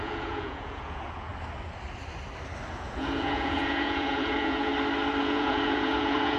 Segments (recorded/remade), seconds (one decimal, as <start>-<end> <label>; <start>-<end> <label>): 0.0-1.3 remade; 1.3-2.7 recorded; 2.7-4.7 remade; 4.7-5.2 recorded; 5.2-6.4 remade